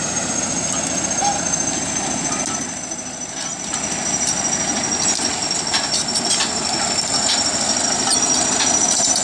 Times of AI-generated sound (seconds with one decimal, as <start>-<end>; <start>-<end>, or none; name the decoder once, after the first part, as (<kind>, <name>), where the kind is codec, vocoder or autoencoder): none